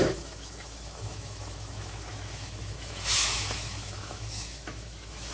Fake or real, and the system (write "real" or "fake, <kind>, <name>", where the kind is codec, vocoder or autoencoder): fake, autoencoder, DAC-VAE